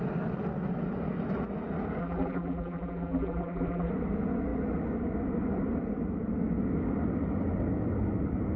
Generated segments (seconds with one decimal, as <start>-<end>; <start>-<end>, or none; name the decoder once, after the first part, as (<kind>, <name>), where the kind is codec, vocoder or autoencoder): 2.0-3.9 (vocoder, BigVGAN v2)